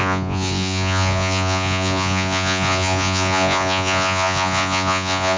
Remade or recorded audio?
remade